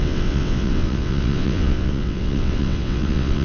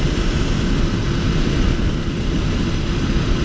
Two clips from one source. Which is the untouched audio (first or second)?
second